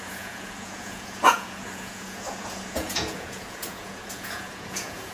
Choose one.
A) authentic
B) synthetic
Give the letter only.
B